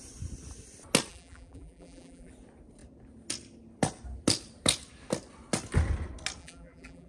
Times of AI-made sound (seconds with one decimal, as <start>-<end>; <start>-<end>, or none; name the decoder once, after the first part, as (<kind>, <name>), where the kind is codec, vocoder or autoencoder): 1.1-2.3 (vocoder, BigVGAN v2); 6.4-7.1